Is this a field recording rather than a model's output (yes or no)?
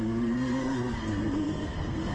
no